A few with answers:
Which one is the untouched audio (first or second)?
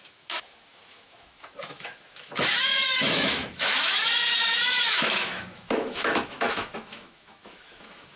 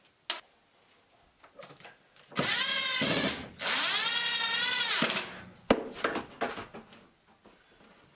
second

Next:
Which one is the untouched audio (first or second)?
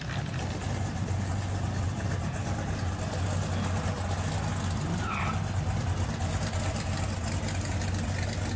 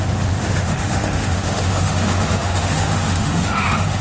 first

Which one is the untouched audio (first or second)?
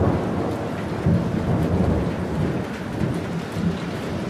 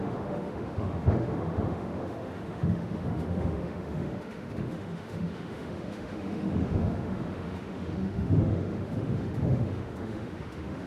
first